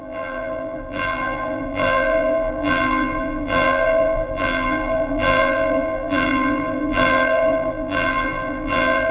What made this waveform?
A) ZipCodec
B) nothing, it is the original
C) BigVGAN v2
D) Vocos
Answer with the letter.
C